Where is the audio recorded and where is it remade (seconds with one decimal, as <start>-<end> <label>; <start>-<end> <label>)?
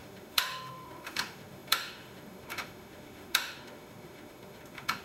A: 0.0-5.0 remade